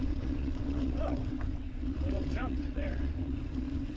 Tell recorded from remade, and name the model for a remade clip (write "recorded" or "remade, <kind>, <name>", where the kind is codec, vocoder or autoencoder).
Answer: remade, vocoder, WaveNeXt